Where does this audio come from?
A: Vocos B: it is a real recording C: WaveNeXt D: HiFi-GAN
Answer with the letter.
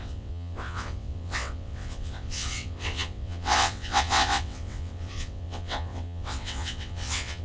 C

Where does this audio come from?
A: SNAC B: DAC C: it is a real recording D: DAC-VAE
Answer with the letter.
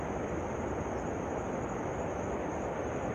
C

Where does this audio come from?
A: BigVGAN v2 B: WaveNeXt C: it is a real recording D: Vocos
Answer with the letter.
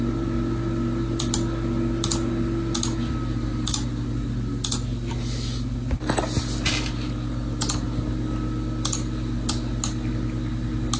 C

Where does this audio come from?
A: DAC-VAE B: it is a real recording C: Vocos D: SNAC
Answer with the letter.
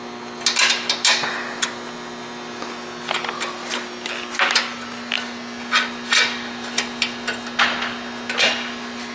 B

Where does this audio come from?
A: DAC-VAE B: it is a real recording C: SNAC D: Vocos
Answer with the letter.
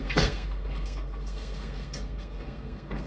C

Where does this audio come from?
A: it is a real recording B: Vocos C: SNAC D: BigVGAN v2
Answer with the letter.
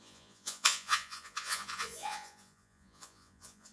B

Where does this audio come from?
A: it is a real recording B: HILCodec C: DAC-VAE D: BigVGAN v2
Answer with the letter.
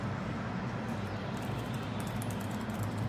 A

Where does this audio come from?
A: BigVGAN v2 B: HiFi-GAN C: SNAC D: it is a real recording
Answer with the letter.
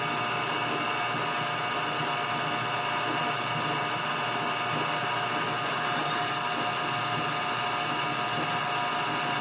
D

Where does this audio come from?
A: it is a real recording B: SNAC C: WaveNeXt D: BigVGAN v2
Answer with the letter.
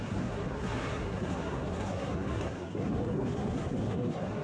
B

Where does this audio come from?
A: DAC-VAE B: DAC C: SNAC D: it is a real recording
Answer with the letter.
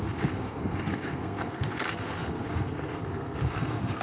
C